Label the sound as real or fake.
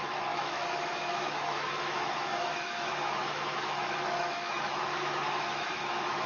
fake